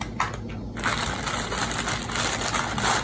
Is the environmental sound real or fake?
real